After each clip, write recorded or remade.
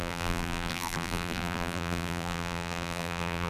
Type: remade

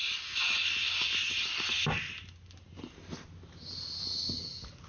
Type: recorded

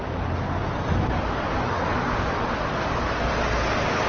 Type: recorded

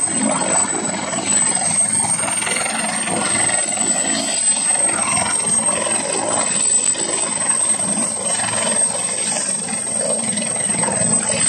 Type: recorded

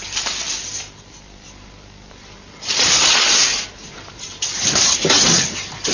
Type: recorded